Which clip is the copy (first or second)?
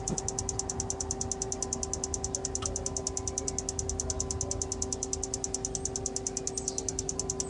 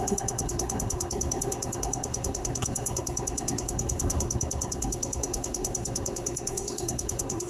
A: second